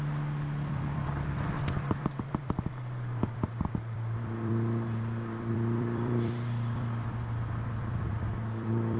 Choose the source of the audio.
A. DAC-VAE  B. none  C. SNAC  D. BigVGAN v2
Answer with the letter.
D